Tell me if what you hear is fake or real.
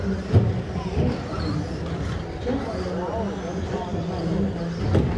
real